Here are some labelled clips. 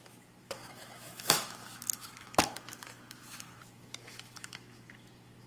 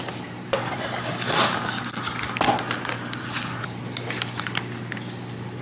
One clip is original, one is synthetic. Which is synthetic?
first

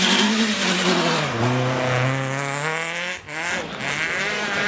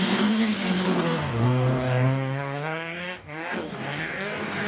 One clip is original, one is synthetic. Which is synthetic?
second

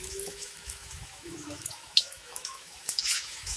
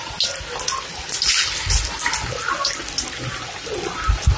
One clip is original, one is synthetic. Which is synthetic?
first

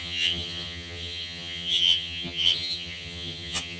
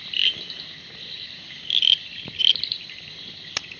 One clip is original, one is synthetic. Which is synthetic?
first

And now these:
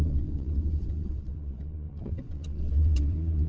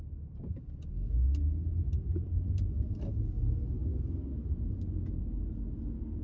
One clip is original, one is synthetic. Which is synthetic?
first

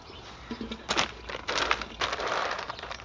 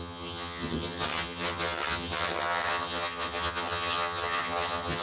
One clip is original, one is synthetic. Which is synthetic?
second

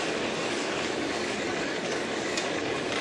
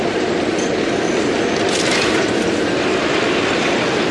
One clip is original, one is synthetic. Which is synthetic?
first